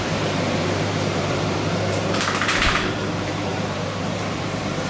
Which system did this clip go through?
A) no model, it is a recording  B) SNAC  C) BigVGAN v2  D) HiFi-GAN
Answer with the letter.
C